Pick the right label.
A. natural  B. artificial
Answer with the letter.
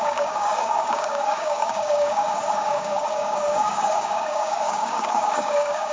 B